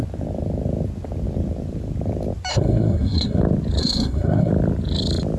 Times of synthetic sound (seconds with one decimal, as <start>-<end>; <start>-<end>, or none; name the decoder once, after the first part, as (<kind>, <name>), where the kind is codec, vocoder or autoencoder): 2.5-3.4 (codec, SNAC); 3.8-4.5